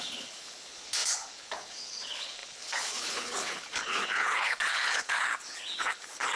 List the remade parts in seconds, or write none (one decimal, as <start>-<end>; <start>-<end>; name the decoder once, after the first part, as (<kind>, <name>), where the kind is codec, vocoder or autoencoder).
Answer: 0.0-6.4 (codec, HILCodec)